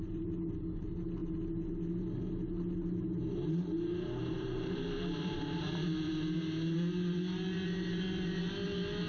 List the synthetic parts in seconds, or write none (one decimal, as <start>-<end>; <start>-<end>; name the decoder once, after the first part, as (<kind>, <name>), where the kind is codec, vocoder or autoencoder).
4.3-6.1 (vocoder, BigVGAN v2)